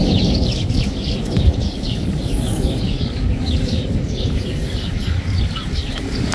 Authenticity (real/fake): fake